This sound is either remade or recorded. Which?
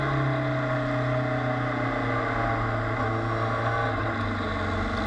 recorded